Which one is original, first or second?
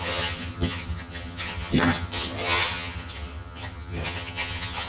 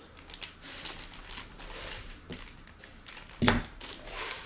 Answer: second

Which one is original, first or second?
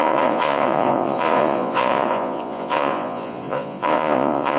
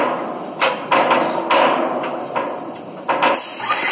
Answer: second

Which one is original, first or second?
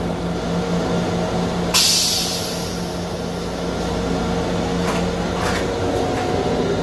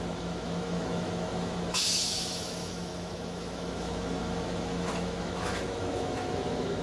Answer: first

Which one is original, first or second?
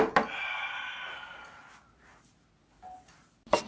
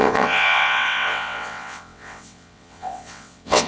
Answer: first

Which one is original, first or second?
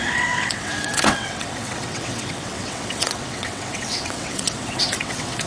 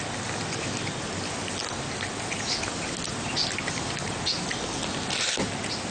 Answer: second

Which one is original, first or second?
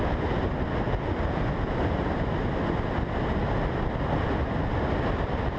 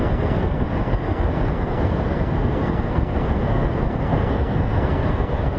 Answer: first